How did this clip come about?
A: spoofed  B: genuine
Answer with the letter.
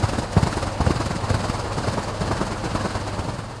B